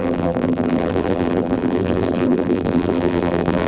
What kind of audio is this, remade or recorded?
remade